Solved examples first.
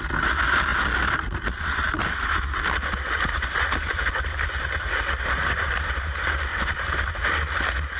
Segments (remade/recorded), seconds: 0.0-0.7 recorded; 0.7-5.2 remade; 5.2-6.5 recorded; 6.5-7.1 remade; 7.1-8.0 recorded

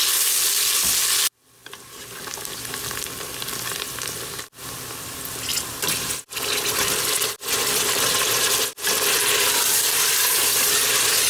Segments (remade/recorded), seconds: 0.0-5.5 recorded; 5.5-10.7 remade; 10.7-11.3 recorded

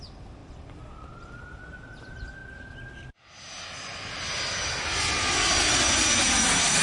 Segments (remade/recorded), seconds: 0.0-2.4 remade; 2.4-6.2 recorded; 6.2-6.8 remade